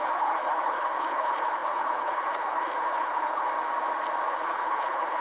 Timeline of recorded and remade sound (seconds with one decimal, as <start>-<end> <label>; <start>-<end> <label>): 0.0-3.5 remade; 3.5-4.3 recorded; 4.3-5.2 remade

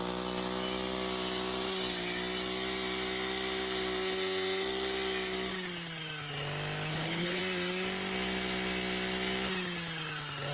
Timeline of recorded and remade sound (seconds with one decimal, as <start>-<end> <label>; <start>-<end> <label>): 0.0-6.9 recorded; 6.9-7.4 remade; 7.4-10.5 recorded